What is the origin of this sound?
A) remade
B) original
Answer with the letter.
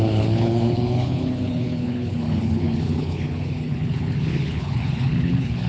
A